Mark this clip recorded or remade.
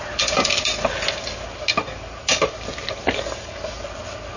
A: recorded